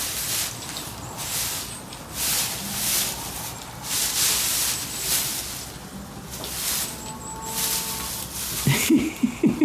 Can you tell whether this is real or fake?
real